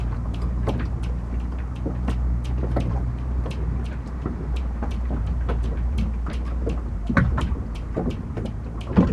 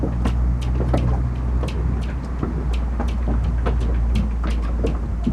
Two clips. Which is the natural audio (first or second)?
second